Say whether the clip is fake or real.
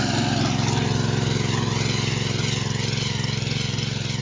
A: real